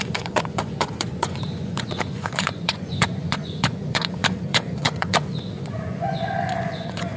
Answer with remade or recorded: remade